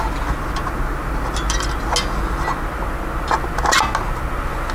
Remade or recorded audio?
recorded